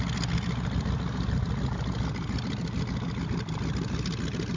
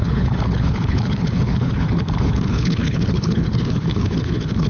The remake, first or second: second